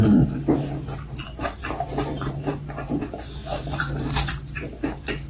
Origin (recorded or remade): remade